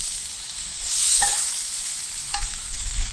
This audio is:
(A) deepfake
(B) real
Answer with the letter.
A